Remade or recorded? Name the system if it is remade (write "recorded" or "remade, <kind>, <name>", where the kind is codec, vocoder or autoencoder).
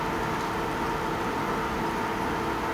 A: recorded